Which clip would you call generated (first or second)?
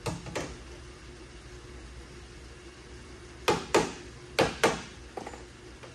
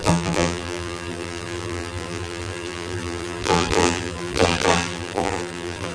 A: second